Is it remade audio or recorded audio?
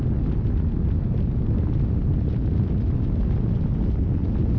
recorded